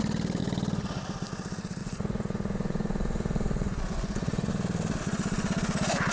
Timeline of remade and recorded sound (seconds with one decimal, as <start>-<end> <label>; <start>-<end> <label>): 0.0-1.8 recorded; 1.8-4.5 remade; 4.5-6.1 recorded